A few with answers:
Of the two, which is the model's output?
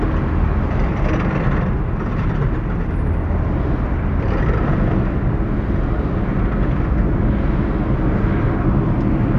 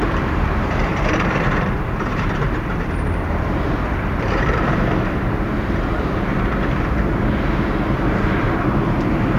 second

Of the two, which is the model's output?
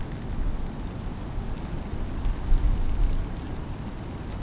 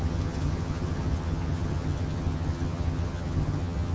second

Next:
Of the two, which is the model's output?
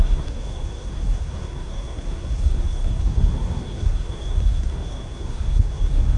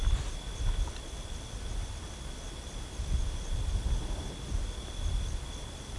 first